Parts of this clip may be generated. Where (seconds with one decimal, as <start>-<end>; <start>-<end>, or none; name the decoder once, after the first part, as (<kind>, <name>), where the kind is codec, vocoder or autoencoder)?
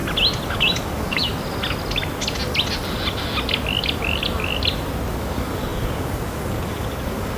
0.5-1.3 (codec, DAC); 5.1-7.4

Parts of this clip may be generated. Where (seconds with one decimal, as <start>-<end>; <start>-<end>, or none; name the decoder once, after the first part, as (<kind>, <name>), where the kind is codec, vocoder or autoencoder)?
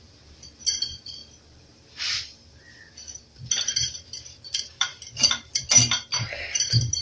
0.0-7.0 (vocoder, BigVGAN v2)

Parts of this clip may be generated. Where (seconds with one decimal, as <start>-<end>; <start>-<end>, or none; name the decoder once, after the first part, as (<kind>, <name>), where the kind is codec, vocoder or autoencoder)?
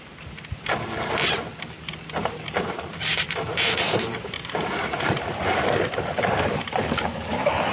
2.2-6.8 (vocoder, BigVGAN v2)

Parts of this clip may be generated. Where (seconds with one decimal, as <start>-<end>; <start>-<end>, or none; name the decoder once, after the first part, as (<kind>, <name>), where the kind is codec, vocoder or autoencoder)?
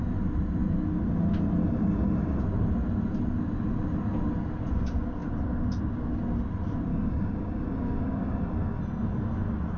1.6-2.4 (codec, DAC); 6.9-8.8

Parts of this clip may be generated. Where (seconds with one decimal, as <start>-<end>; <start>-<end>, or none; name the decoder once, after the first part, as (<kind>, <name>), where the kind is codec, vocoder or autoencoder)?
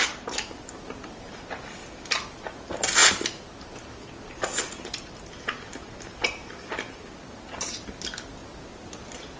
none